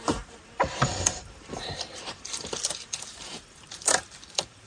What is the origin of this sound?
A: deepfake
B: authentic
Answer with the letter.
A